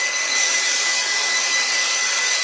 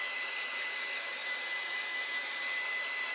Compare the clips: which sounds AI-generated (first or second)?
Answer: first